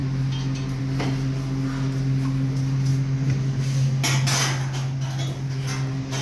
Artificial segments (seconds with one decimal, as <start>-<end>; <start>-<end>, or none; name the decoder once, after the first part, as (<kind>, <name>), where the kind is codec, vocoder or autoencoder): none